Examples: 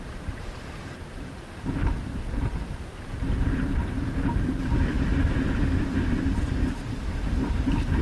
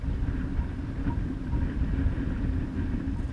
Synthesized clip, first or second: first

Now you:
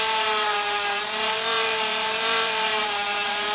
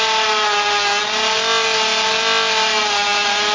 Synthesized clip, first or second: first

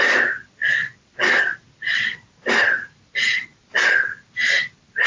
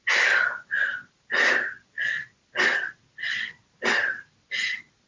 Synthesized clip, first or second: first